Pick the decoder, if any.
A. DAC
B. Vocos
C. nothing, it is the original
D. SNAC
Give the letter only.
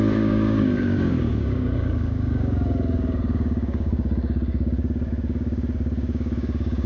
A